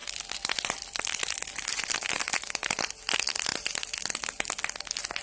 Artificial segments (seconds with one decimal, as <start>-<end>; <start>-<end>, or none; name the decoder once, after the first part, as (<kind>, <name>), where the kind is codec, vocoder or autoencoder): 0.0-3.1 (vocoder, BigVGAN v2); 3.5-4.6